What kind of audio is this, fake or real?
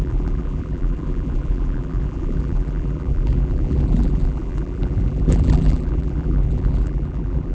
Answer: fake